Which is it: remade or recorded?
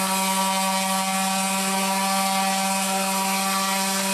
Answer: recorded